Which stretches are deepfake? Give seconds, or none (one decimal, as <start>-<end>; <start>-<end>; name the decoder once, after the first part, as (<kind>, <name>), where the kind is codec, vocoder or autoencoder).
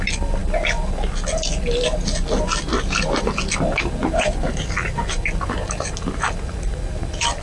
none